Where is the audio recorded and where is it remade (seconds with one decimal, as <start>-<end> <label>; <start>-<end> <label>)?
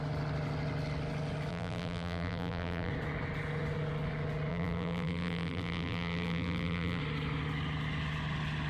0.0-1.5 recorded; 1.5-2.9 remade; 2.9-4.5 recorded; 4.5-7.0 remade; 7.0-8.7 recorded